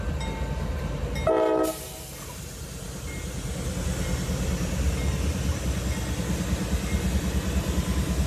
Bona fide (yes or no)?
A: yes